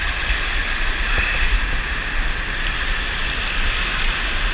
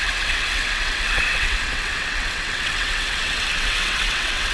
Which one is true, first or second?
first